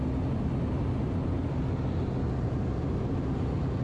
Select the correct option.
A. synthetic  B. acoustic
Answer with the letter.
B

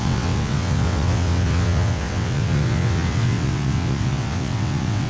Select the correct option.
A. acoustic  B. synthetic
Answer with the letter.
B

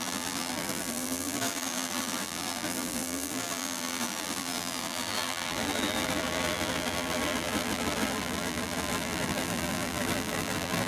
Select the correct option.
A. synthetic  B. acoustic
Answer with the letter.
A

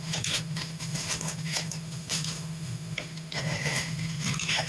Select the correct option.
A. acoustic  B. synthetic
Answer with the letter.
B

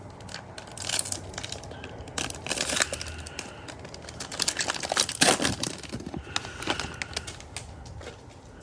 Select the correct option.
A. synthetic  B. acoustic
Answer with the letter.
B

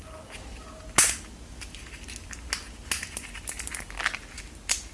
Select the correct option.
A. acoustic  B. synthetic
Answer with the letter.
A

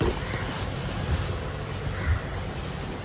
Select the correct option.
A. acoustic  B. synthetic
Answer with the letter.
B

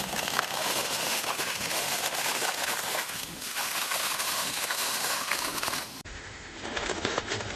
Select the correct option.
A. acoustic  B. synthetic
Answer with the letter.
B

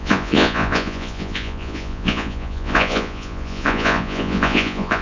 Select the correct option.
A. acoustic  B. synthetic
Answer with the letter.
B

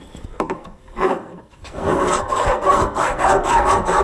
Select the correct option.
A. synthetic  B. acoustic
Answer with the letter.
A